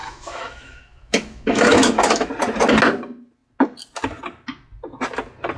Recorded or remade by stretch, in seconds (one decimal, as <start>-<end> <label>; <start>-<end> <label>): 0.0-2.3 remade; 2.3-5.6 recorded